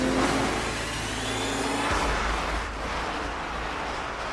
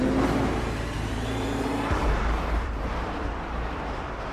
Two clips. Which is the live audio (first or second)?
first